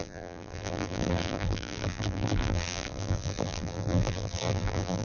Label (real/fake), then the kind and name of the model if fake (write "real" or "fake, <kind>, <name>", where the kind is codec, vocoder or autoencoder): fake, vocoder, BigVGAN v2